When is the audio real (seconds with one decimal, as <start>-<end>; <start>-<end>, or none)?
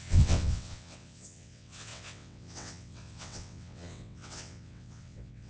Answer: none